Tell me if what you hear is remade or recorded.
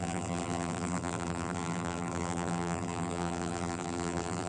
remade